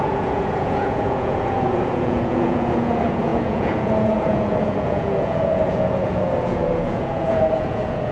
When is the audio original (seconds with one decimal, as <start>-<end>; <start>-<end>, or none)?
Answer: none